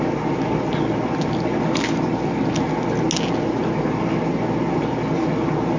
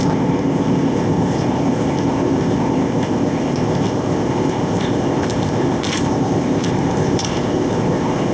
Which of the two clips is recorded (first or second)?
first